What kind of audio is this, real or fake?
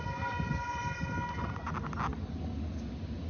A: real